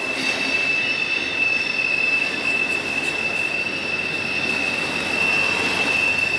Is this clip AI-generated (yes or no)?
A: no